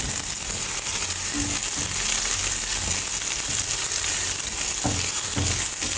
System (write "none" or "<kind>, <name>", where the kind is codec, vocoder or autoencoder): none